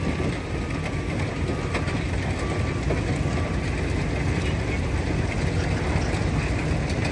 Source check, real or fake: real